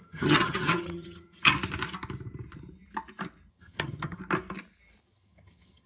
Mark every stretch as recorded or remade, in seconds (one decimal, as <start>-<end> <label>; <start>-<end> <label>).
0.0-1.5 remade; 1.5-3.5 recorded; 3.5-4.2 remade; 4.2-5.0 recorded; 5.0-5.9 remade